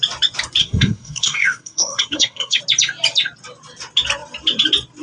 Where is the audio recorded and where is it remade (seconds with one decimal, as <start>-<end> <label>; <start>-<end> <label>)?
0.0-0.6 recorded; 0.6-2.6 remade; 2.6-5.0 recorded